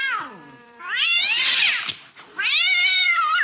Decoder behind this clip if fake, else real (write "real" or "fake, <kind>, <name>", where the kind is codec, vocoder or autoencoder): fake, vocoder, BigVGAN v2